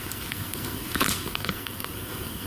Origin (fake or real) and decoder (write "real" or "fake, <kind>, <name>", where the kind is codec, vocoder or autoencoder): fake, codec, SNAC